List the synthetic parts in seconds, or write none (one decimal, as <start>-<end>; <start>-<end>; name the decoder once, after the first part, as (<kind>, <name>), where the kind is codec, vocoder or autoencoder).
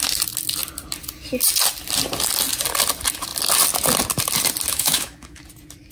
4.7-5.4 (autoencoder, DAC-VAE)